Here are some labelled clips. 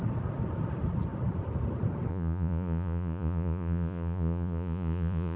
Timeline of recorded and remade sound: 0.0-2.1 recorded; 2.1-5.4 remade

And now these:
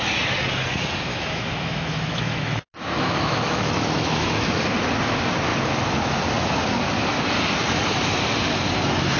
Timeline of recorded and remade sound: 0.0-1.1 recorded; 1.1-4.6 remade; 4.6-9.2 recorded